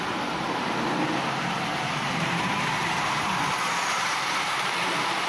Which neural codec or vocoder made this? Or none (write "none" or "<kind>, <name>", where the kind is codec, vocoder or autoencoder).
vocoder, BigVGAN v2